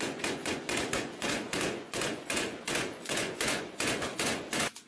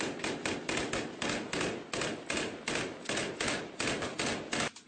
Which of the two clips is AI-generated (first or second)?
first